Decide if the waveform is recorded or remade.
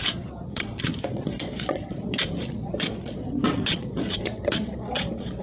remade